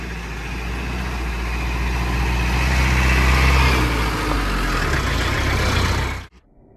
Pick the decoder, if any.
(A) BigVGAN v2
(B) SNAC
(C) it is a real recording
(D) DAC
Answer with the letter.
C